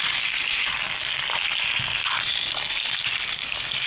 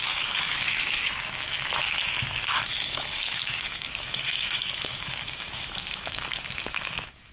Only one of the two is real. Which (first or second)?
first